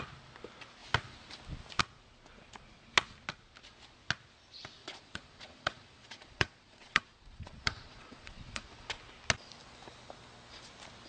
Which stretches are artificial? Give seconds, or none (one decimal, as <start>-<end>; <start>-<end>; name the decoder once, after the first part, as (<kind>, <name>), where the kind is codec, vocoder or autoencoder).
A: 4.8-8.9 (vocoder, Vocos)